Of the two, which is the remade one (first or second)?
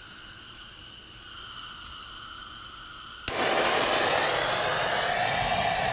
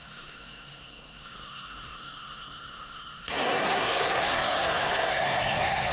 second